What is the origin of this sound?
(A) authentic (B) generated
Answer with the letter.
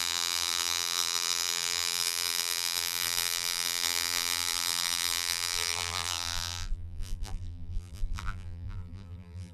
B